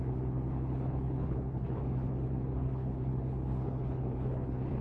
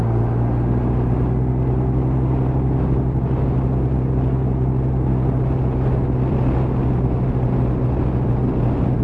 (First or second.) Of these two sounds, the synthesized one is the first